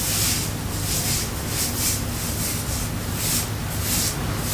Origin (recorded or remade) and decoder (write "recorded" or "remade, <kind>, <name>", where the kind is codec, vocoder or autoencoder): recorded